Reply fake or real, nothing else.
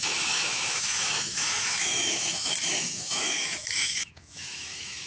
fake